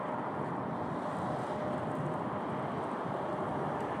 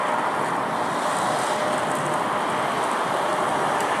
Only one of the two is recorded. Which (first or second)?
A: second